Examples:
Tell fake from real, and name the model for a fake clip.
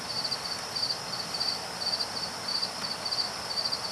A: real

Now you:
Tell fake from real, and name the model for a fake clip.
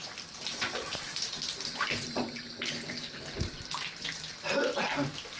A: fake, vocoder, BigVGAN v2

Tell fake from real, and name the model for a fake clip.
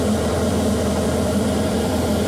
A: fake, vocoder, BigVGAN v2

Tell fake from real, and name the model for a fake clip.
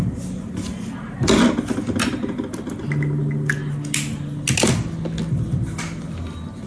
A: real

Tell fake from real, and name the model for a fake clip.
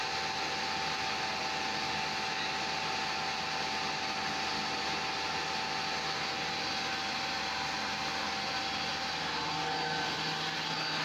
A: real